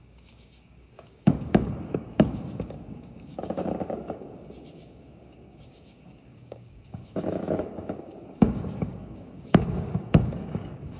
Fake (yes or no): yes